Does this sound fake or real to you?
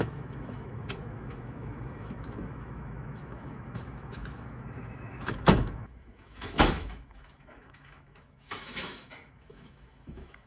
fake